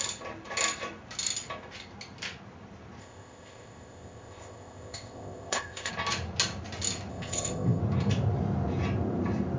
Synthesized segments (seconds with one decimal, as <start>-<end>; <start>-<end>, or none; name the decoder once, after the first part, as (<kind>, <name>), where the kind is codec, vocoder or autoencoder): 3.0-5.9 (codec, ZipCodec); 7.1-7.8